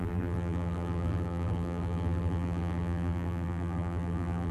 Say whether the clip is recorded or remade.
remade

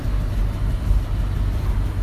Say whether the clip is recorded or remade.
recorded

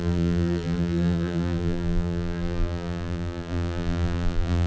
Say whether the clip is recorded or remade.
remade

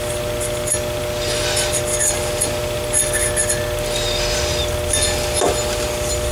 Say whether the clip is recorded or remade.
recorded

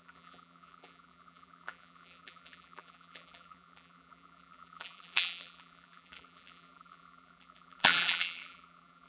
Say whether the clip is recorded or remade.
remade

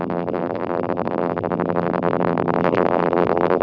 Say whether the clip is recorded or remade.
remade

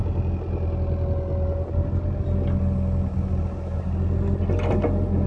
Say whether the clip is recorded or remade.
recorded